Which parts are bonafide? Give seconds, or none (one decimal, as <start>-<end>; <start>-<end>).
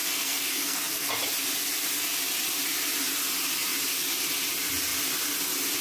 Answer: 1.1-5.8